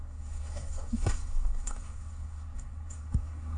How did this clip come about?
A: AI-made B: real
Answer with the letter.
A